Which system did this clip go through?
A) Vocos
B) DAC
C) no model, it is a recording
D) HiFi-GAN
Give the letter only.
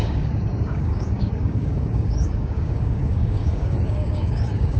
B